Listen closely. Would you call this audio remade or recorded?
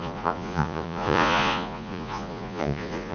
remade